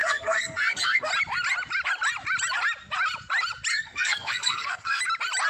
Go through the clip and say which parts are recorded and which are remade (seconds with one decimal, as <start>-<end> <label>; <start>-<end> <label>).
0.0-1.1 remade; 1.1-3.7 recorded; 3.7-5.0 remade; 5.0-5.5 recorded